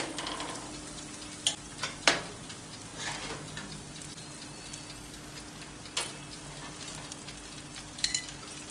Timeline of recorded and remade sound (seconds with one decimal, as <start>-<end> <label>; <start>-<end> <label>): 0.0-1.7 recorded; 1.7-2.2 remade; 2.2-8.7 recorded